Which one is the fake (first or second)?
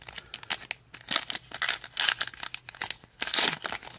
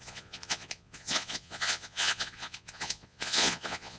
second